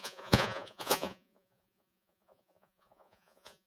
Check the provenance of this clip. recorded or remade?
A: remade